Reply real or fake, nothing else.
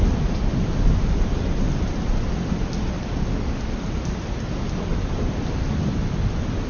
real